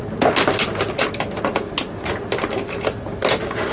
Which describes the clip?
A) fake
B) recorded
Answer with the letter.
B